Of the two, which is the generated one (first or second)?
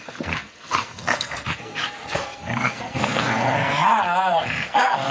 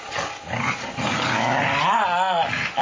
first